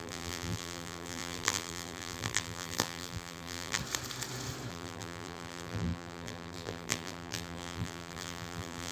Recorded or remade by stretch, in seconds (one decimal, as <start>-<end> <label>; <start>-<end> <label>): 0.0-3.8 remade; 3.8-4.7 recorded; 4.7-8.9 remade